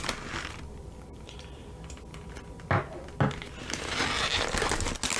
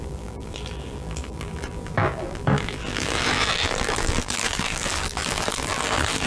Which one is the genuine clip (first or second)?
first